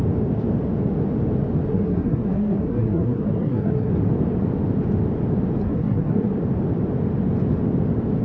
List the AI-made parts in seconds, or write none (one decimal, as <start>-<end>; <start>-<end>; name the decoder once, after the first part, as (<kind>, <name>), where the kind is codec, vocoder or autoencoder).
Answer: 1.7-3.9 (codec, SNAC); 5.6-6.3